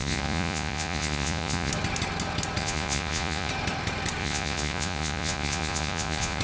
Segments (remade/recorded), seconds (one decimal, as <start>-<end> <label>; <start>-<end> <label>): 0.0-1.7 remade; 1.7-2.6 recorded; 2.6-3.5 remade; 3.5-4.2 recorded; 4.2-6.4 remade